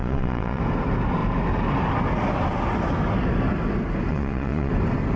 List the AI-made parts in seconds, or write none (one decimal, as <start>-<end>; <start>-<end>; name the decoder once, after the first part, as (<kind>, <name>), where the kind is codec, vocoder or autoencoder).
0.0-0.6 (vocoder, Vocos); 4.1-4.7

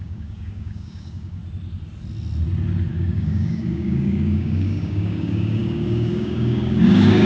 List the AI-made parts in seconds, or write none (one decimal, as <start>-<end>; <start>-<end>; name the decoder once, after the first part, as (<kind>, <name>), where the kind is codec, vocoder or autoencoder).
0.0-1.4 (codec, DAC); 2.9-7.3

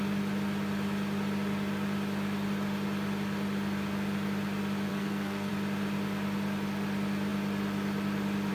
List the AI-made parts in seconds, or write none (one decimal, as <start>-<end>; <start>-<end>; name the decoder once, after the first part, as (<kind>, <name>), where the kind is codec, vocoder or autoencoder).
4.9-5.5 (codec, SNAC)

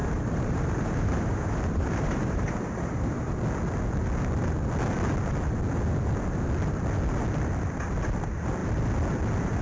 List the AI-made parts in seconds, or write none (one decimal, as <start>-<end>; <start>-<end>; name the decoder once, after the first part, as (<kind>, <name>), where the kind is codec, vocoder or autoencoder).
0.0-3.3 (vocoder, BigVGAN v2)

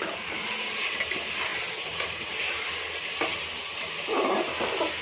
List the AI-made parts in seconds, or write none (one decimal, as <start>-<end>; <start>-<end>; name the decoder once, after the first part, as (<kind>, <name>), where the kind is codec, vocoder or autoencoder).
none

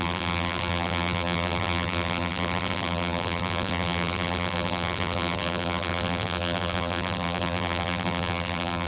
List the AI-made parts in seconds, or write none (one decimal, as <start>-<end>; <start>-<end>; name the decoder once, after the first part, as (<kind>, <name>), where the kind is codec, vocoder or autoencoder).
0.0-8.9 (vocoder, BigVGAN v2)

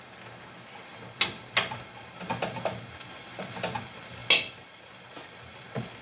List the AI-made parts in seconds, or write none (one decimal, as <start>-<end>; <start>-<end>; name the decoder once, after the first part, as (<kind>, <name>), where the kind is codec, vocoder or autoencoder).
none

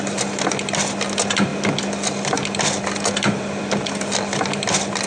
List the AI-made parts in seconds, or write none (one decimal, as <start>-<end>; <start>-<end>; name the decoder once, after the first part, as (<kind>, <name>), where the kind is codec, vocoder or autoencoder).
none